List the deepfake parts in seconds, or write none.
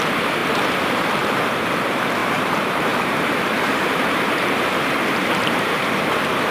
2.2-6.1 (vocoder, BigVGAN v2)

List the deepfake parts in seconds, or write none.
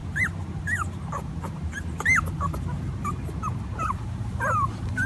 0.0-5.1 (vocoder, BigVGAN v2)